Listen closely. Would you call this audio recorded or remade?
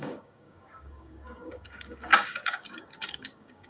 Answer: remade